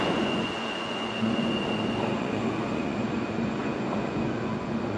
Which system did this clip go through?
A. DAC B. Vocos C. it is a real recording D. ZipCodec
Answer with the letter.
B